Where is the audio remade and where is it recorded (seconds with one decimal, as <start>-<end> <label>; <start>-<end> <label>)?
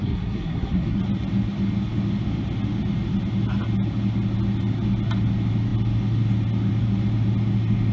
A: 0.0-1.0 remade; 1.0-7.9 recorded